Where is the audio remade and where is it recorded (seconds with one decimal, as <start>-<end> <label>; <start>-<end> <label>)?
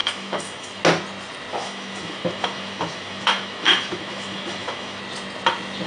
0.0-0.8 remade; 0.8-1.5 recorded; 1.5-5.0 remade; 5.0-5.9 recorded